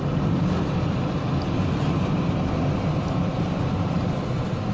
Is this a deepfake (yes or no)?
no